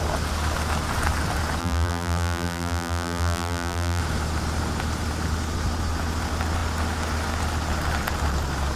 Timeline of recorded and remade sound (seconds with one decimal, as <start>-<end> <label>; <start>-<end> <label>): 0.0-1.6 recorded; 1.6-4.0 remade; 4.0-8.8 recorded

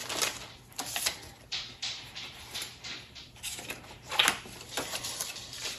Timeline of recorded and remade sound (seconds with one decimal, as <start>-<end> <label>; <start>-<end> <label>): 0.0-1.5 recorded; 1.5-5.0 remade; 5.0-5.8 recorded